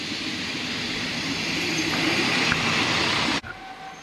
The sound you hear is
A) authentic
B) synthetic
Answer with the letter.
A